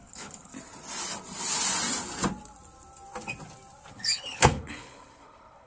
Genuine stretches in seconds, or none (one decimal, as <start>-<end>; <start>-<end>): 0.5-3.9